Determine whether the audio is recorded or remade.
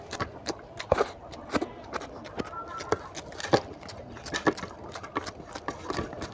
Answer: recorded